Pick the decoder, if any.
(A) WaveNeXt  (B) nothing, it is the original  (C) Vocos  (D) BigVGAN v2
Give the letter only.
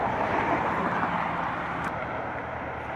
B